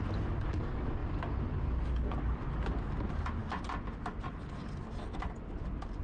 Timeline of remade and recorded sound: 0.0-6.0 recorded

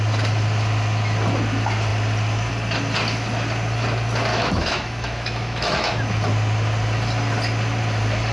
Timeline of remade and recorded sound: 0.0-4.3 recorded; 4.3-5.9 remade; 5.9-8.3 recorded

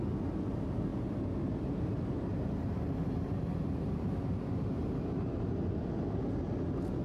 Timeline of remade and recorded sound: 0.0-7.0 recorded

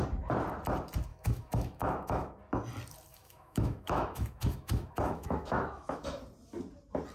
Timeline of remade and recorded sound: 0.0-1.1 recorded; 1.1-2.4 remade; 2.4-3.1 recorded; 3.1-6.2 remade; 6.2-7.1 recorded

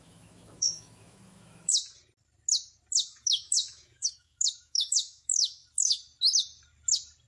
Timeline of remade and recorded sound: 0.0-1.7 remade; 1.7-3.1 recorded; 3.1-5.6 remade; 5.6-7.3 recorded